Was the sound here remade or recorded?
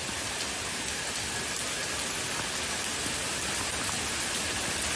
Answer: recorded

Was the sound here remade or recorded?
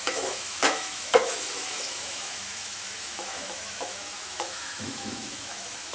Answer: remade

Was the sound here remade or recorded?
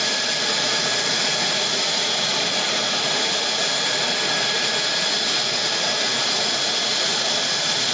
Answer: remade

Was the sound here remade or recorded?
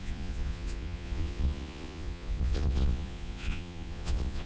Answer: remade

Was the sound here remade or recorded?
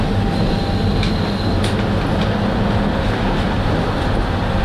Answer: recorded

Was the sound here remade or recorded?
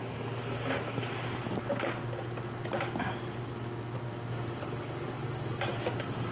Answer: recorded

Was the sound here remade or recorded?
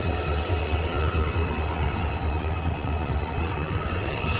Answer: remade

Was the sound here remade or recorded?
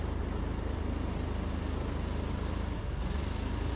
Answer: recorded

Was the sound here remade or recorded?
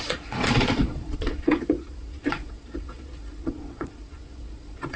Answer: remade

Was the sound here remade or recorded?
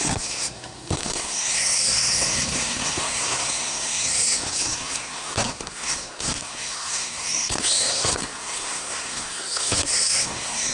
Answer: remade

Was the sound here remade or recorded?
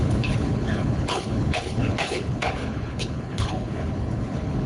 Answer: remade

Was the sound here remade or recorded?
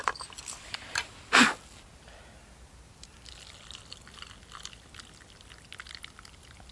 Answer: recorded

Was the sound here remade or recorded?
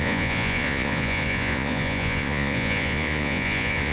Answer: remade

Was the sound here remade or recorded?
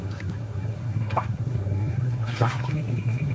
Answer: remade